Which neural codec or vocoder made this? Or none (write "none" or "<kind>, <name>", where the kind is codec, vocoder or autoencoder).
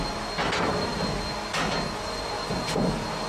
none